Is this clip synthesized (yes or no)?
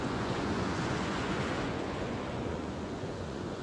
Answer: yes